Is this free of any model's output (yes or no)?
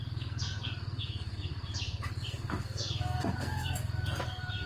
no